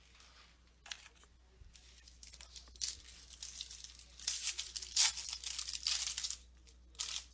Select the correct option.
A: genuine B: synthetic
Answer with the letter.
A